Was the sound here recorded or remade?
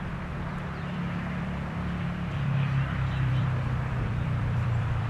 remade